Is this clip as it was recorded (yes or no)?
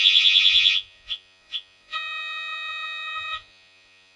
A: no